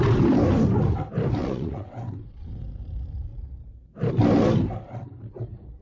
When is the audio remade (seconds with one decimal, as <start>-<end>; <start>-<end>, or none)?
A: 1.4-2.6